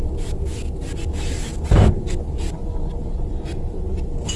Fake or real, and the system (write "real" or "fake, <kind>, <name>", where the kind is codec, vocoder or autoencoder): real